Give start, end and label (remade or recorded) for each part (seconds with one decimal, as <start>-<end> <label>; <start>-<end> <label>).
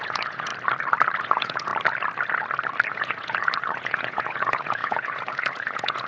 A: 0.0-0.5 remade; 0.5-1.2 recorded; 1.2-1.7 remade; 1.7-2.9 recorded; 2.9-6.1 remade